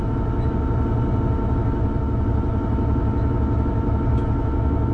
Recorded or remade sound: recorded